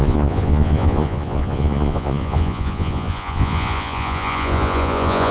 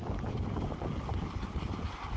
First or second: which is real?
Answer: second